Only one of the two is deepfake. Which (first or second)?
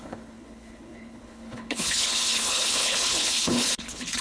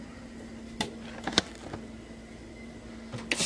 first